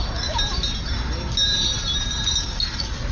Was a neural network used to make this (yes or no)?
no